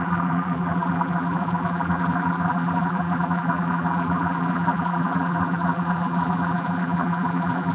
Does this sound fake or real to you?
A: fake